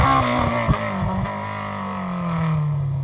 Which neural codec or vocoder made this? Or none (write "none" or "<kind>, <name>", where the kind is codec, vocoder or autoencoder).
none